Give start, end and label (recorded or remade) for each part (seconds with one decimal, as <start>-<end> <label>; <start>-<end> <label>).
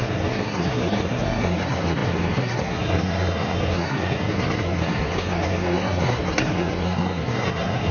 0.0-7.9 remade